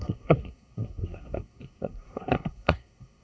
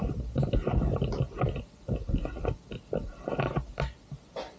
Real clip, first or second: second